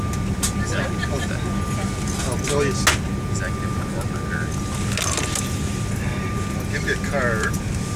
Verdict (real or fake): real